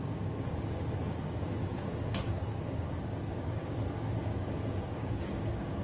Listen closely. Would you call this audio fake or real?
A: fake